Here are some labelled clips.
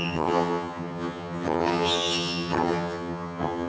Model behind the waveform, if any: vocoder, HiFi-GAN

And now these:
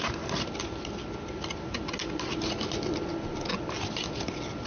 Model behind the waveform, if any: none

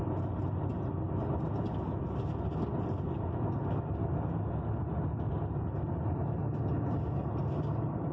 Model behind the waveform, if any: none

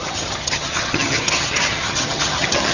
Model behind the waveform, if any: vocoder, HiFi-GAN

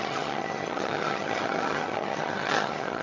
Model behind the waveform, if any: vocoder, HiFi-GAN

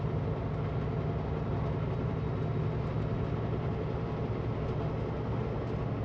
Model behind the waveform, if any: none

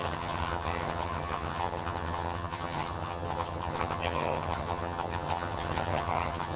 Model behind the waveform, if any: vocoder, HiFi-GAN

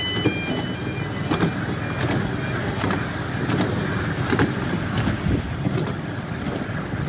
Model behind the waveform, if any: none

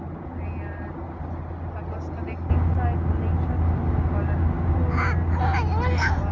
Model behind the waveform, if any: none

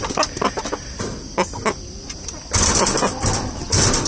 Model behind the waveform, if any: none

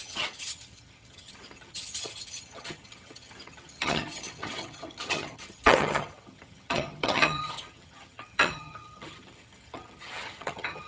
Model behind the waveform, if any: vocoder, HiFi-GAN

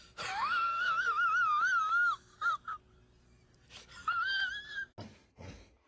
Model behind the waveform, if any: none